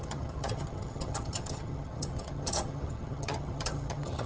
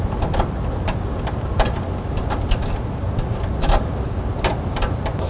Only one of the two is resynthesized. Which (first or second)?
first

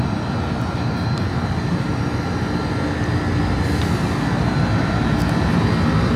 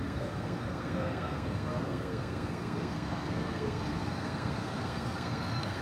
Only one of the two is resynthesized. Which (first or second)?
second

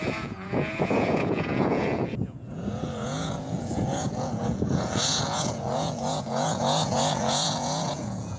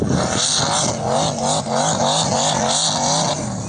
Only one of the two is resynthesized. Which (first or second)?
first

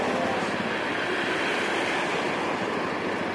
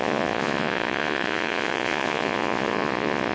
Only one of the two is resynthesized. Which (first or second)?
second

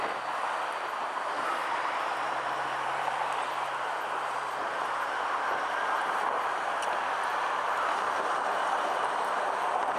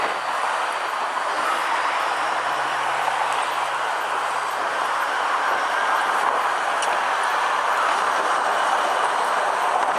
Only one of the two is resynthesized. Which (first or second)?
first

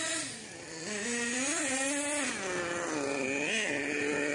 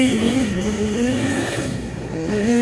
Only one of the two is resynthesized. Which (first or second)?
second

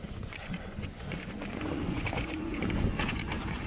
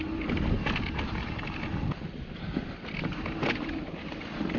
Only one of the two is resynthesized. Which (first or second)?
first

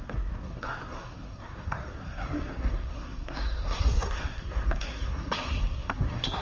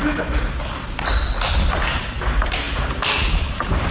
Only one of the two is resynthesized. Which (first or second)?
first